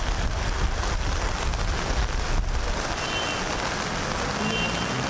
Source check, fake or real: real